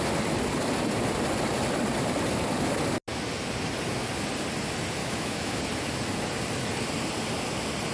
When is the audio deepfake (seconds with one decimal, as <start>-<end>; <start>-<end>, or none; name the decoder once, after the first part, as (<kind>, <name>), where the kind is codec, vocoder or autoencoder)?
5.0-5.6 (autoencoder, DAC-VAE)